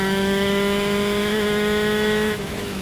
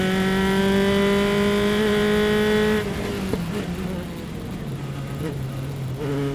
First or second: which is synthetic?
first